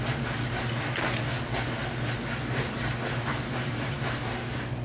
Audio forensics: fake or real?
real